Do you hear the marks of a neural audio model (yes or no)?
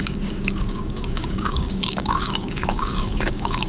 yes